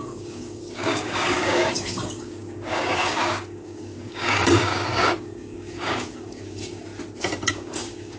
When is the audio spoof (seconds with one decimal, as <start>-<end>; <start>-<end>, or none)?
0.0-6.9; 7.5-8.2

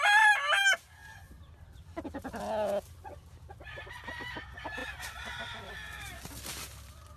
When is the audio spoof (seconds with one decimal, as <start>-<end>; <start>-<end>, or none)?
1.0-2.4; 4.8-5.7

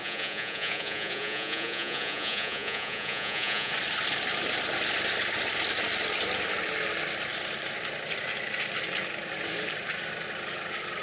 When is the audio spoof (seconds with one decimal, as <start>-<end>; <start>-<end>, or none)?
0.0-3.7

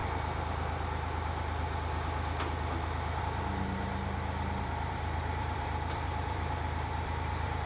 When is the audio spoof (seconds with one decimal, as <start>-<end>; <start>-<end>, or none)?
4.6-7.7